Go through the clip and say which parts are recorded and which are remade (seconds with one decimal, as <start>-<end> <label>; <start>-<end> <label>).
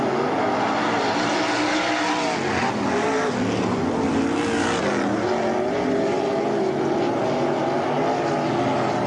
0.0-9.1 recorded